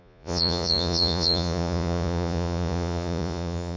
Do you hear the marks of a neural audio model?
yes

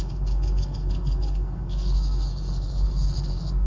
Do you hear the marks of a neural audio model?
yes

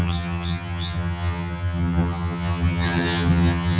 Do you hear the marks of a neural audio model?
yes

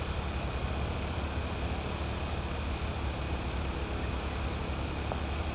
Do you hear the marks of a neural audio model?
no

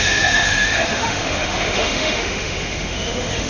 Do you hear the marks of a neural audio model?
yes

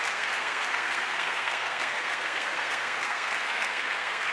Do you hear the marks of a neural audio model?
yes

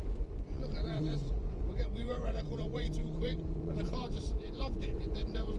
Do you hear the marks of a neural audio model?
yes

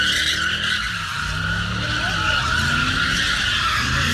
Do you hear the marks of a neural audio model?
no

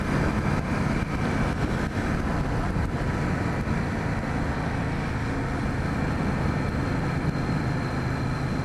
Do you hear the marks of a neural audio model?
no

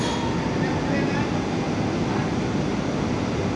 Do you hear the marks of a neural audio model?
no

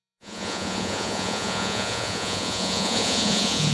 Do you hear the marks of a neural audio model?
yes